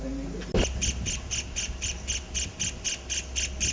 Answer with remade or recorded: recorded